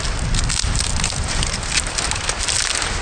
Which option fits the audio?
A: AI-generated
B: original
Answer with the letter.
B